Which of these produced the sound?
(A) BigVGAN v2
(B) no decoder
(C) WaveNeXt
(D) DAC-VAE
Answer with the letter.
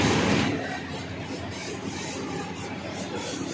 B